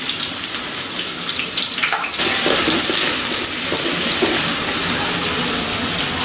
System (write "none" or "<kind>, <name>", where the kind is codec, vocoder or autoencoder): none